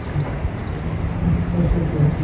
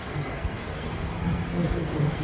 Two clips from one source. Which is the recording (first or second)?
first